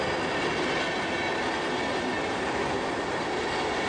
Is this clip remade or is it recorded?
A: recorded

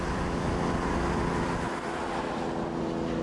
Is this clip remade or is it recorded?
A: recorded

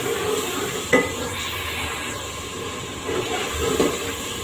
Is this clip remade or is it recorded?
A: recorded